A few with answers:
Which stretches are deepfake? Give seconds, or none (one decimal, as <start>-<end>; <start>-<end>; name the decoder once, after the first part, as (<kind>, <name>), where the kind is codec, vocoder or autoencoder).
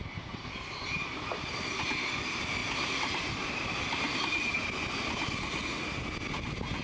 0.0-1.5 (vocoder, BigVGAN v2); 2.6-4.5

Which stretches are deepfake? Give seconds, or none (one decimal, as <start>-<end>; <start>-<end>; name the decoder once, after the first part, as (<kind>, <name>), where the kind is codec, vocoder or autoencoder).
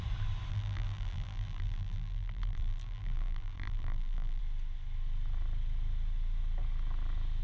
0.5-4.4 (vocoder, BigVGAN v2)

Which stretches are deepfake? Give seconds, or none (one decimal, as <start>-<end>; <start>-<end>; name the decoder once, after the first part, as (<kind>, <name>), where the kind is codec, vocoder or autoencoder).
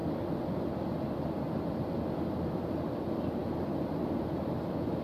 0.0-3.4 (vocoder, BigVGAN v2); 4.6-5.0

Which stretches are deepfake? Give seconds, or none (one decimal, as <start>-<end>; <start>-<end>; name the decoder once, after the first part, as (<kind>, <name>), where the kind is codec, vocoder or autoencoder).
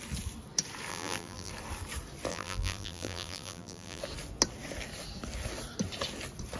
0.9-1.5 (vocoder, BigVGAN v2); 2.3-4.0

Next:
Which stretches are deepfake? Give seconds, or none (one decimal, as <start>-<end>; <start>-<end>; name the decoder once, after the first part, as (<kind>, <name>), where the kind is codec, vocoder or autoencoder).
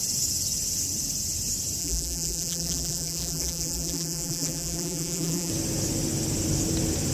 1.8-5.5 (vocoder, BigVGAN v2)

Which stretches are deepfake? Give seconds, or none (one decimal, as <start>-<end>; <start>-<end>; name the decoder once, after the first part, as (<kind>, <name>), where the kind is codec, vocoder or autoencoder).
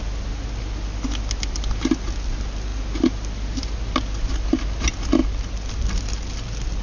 none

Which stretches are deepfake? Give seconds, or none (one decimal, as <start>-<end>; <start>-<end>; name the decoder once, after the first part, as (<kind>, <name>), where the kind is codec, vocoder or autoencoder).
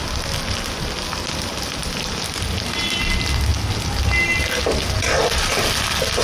1.8-3.1 (vocoder, BigVGAN v2)